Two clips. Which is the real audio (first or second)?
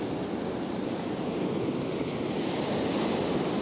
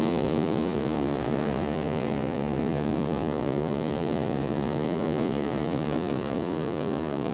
first